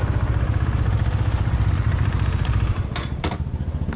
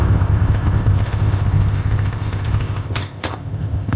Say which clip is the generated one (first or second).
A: second